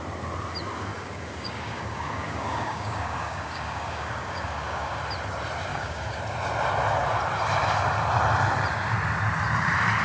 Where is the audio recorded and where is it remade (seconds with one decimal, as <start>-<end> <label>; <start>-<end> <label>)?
0.0-0.9 recorded; 0.9-5.0 remade; 5.0-5.7 recorded; 5.7-6.2 remade; 6.2-10.0 recorded